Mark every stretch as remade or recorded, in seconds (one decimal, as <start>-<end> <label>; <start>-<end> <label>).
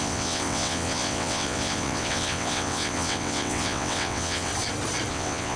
0.0-4.5 remade; 4.5-5.1 recorded; 5.1-5.6 remade